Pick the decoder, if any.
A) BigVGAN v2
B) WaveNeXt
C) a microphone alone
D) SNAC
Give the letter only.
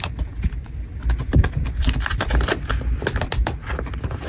A